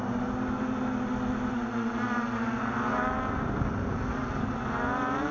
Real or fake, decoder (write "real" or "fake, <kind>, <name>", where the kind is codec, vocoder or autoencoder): real